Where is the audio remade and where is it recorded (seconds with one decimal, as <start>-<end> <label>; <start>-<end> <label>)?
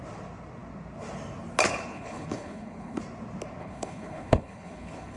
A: 0.0-1.9 recorded; 1.9-3.0 remade; 3.0-3.6 recorded; 3.6-5.2 remade